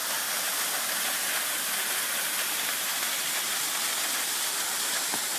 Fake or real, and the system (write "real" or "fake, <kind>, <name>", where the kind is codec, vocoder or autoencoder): real